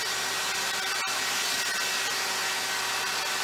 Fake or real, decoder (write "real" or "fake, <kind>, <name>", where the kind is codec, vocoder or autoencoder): real